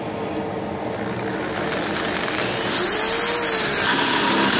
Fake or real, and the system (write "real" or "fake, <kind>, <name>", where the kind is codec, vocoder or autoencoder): real